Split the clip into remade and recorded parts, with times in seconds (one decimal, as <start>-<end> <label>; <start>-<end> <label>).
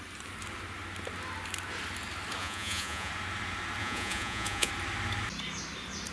0.0-2.4 recorded; 2.4-3.1 remade; 3.1-3.8 recorded; 3.8-4.7 remade; 4.7-6.1 recorded